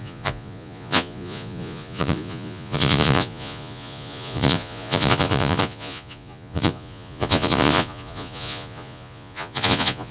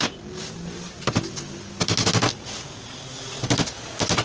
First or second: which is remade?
first